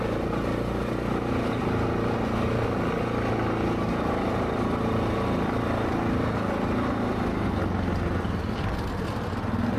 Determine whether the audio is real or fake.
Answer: real